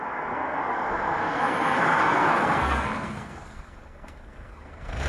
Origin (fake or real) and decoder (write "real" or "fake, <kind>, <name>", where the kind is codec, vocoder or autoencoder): fake, codec, SNAC